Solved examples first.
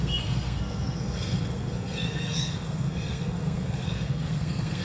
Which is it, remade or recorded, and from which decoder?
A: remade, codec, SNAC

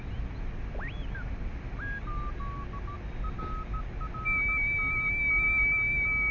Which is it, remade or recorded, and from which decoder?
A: recorded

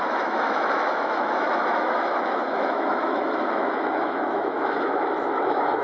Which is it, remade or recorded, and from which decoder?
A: remade, autoencoder, DAC-VAE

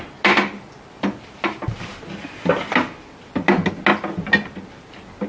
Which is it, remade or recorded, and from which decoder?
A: recorded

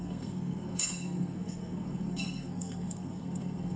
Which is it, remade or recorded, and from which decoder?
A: remade, codec, SNAC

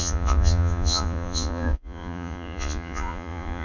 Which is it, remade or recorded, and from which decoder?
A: remade, vocoder, Vocos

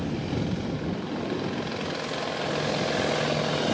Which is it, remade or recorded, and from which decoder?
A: recorded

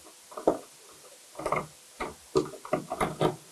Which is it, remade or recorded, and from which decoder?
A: recorded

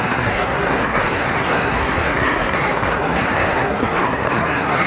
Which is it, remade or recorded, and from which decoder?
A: remade, codec, SNAC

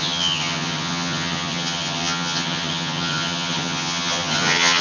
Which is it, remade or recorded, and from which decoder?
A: remade, vocoder, HiFi-GAN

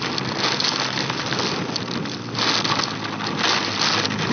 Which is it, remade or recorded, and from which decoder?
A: recorded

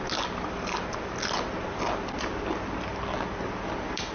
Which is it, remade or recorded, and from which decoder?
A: recorded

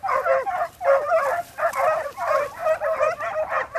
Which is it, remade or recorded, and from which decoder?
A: recorded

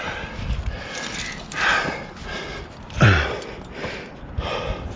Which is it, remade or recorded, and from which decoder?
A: recorded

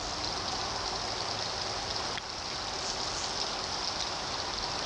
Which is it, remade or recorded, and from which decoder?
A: recorded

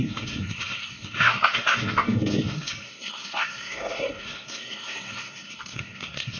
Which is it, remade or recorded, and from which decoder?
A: remade, codec, SNAC